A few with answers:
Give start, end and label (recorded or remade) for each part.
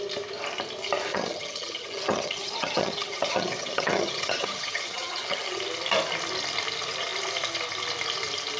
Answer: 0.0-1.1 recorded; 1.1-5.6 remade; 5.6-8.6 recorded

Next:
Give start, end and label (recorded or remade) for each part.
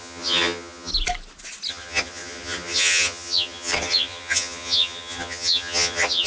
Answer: 0.0-0.9 remade; 0.9-1.7 recorded; 1.7-6.3 remade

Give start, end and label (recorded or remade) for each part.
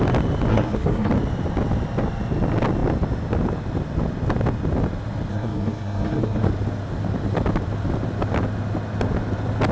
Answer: 0.0-0.5 recorded; 0.5-1.1 remade; 1.1-5.3 recorded; 5.3-6.5 remade; 6.5-9.7 recorded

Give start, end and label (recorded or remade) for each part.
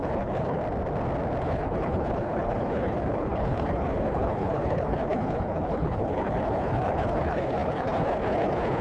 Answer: 0.0-0.6 remade; 0.6-1.4 recorded; 1.4-8.8 remade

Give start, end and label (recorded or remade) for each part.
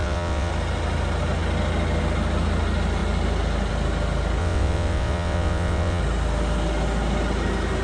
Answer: 0.0-0.5 remade; 0.5-4.4 recorded; 4.4-6.0 remade; 6.0-7.8 recorded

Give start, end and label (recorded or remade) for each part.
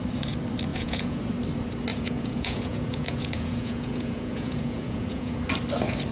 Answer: 0.0-0.7 recorded; 0.7-1.2 remade; 1.2-1.9 recorded; 1.9-5.4 remade; 5.4-6.1 recorded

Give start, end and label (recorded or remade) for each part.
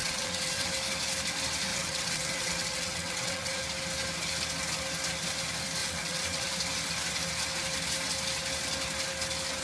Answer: 0.0-0.7 remade; 0.7-1.7 recorded; 1.7-3.6 remade; 3.6-5.8 recorded; 5.8-6.5 remade; 6.5-9.6 recorded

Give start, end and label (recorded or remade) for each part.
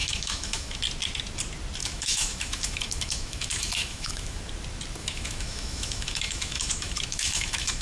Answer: 0.0-0.8 remade; 0.8-1.8 recorded; 1.8-4.4 remade; 4.4-5.0 recorded; 5.0-7.8 remade